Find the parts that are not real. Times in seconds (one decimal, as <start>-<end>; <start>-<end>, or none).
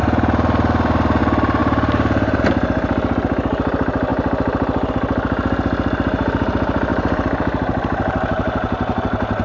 0.0-1.2; 1.6-2.4; 6.9-9.0